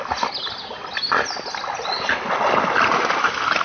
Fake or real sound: real